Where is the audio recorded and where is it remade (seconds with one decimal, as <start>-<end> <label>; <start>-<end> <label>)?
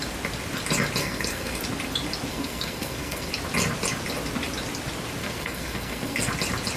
0.0-1.0 recorded; 1.0-1.6 remade; 1.6-2.3 recorded; 2.3-3.3 remade; 3.3-5.2 recorded; 5.2-6.3 remade; 6.3-6.8 recorded